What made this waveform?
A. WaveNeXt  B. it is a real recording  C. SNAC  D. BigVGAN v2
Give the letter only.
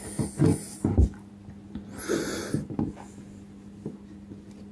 B